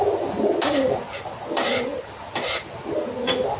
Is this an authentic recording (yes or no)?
yes